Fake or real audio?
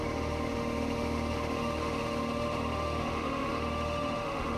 fake